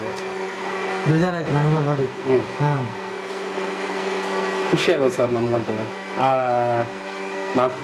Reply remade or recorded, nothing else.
remade